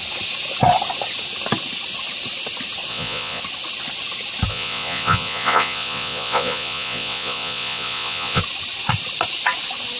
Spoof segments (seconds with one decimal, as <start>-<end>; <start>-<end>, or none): 2.9-3.4; 4.5-8.4